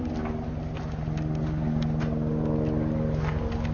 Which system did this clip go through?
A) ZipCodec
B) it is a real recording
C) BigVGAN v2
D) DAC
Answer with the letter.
B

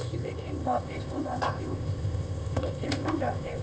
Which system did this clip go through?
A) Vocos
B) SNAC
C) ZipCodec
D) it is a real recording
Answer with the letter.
C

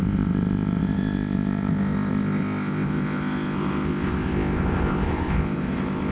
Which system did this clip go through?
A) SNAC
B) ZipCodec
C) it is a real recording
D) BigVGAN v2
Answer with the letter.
B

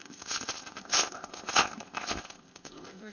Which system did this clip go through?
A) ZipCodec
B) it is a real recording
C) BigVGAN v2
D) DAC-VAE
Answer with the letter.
A